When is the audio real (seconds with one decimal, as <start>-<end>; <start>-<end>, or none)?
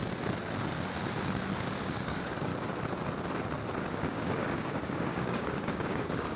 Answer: 0.0-1.8; 2.5-3.9